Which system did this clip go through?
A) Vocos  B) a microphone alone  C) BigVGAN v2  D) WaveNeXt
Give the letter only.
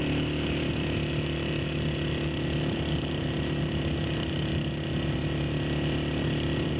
B